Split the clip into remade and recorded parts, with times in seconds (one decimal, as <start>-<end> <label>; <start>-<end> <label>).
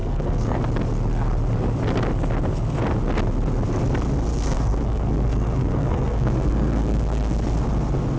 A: 0.0-0.6 remade; 0.6-4.3 recorded; 4.3-7.6 remade; 7.6-8.2 recorded